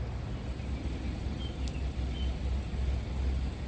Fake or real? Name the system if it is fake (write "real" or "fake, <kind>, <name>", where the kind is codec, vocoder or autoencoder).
real